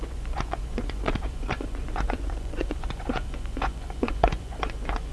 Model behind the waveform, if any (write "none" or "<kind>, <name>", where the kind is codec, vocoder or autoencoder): vocoder, Vocos